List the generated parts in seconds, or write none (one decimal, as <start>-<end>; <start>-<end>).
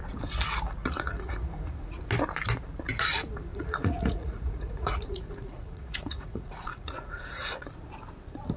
0.8-2.0; 3.5-7.7